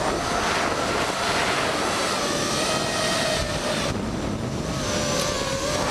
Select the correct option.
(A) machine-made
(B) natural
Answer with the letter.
B